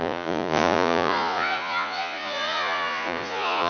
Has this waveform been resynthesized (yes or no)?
yes